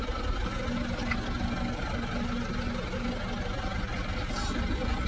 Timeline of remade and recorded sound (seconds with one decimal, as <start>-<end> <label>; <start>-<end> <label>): 0.0-5.1 recorded